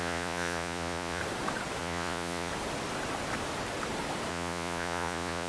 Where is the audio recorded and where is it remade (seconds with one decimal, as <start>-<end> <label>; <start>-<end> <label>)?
0.0-1.2 remade; 1.2-1.8 recorded; 1.8-2.5 remade; 2.5-4.3 recorded; 4.3-5.5 remade